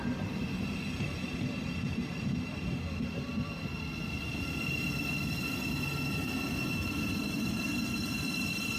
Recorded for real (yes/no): yes